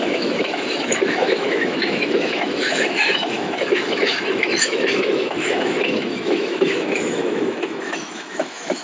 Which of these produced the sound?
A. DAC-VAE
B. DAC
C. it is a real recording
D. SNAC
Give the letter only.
A